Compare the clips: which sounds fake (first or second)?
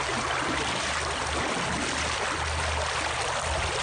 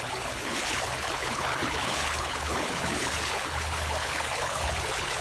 second